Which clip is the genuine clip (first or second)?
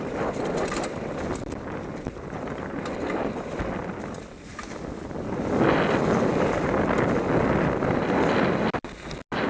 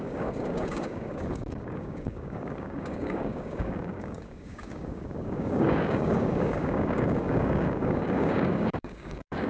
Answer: first